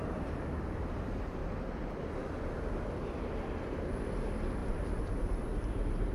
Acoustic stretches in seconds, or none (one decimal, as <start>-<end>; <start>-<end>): 1.4-4.0

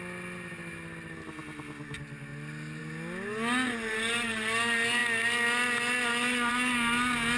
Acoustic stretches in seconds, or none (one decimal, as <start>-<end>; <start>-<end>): 0.0-7.4

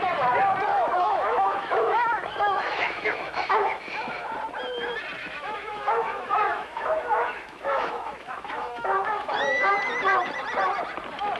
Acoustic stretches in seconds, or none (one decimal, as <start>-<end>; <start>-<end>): 0.0-0.7; 3.8-5.2; 9.7-11.4

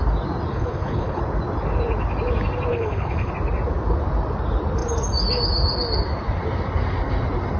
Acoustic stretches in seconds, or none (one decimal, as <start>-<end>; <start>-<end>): 0.0-0.5; 1.2-2.7; 3.3-7.6

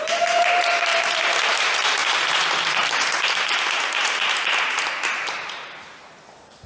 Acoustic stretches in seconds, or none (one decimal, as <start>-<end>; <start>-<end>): 0.9-1.6

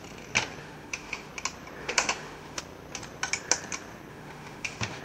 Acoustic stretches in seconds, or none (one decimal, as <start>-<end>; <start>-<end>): 0.0-0.6; 1.3-1.8; 2.6-4.1

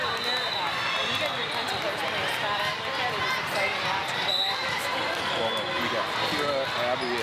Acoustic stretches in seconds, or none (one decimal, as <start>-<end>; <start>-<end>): 0.0-1.0; 3.2-4.0; 5.7-7.2

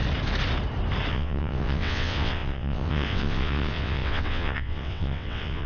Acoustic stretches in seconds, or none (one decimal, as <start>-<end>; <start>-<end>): 0.0-1.1